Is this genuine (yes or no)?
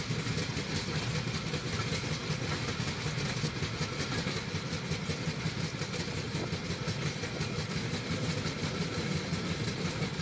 yes